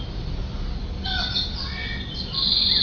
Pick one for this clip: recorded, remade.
recorded